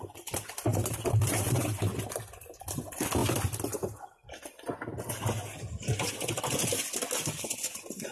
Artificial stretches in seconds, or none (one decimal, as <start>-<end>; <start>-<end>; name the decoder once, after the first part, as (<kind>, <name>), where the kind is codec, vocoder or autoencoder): 0.7-1.6 (vocoder, BigVGAN v2)